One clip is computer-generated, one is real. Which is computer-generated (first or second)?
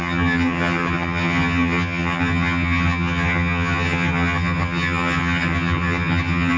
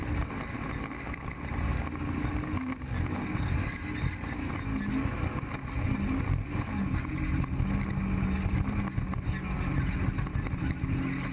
first